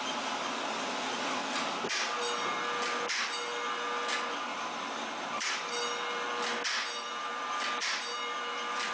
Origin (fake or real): real